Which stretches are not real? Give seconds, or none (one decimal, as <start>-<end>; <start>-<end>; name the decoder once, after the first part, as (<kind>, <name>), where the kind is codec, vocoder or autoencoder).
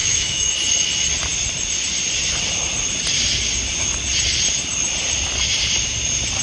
0.0-0.5 (autoencoder, DAC-VAE)